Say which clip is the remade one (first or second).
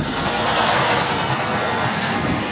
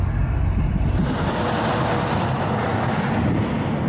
first